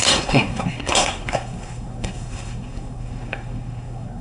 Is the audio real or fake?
fake